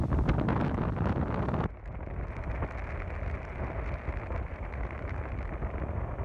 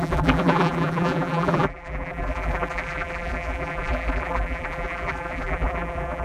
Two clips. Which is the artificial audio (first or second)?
second